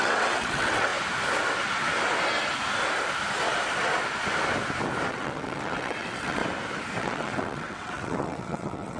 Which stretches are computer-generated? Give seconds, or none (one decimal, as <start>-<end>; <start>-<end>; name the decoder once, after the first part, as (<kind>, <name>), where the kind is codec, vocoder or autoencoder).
0.0-0.9 (vocoder, WaveNeXt); 5.1-6.4; 7.0-9.0